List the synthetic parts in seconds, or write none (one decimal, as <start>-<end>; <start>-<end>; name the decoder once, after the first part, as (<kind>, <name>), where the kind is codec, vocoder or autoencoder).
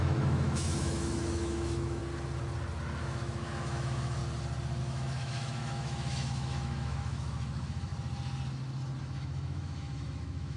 0.0-2.0 (autoencoder, DAC-VAE); 3.0-4.2; 4.8-7.9; 9.0-10.6